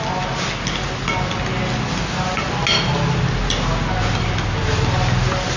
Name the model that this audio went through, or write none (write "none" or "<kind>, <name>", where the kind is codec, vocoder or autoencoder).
none